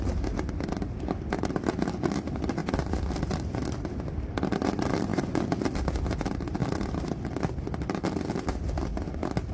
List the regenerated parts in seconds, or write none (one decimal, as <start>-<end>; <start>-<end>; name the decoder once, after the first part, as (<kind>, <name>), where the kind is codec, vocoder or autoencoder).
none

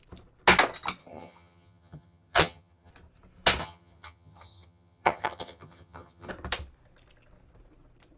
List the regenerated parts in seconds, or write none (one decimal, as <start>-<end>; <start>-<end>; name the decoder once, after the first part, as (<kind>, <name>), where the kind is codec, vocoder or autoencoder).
1.0-2.9 (vocoder, HiFi-GAN); 3.6-6.3

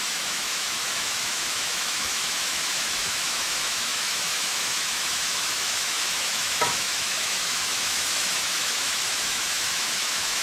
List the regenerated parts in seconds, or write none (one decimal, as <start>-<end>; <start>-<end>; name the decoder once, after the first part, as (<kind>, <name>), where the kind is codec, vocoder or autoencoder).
0.0-10.4 (autoencoder, DAC-VAE)